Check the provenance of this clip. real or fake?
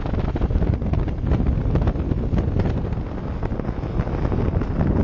real